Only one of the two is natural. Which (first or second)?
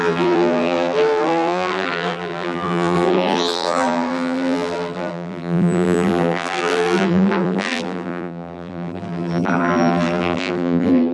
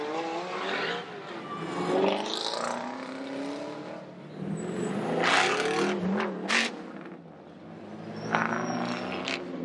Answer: second